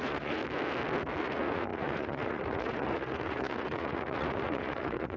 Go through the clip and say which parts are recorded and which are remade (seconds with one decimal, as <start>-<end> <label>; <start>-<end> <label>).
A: 0.0-0.4 remade; 0.4-1.2 recorded; 1.2-5.2 remade